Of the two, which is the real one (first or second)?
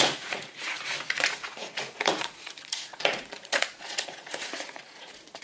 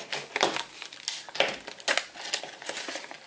second